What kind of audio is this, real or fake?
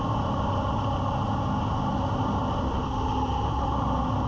real